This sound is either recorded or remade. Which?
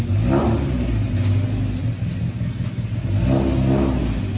recorded